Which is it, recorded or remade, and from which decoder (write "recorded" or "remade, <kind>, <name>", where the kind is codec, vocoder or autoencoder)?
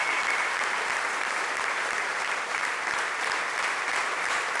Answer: remade, vocoder, BigVGAN v2